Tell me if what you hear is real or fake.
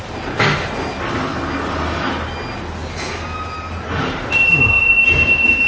real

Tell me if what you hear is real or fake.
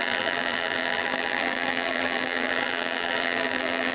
fake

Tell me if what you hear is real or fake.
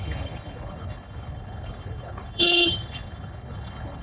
fake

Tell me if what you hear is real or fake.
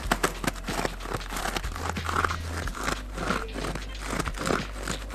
real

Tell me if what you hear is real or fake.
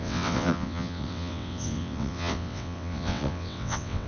fake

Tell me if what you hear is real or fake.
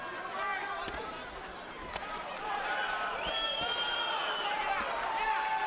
real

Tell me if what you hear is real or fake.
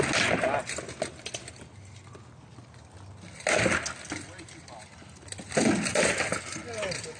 real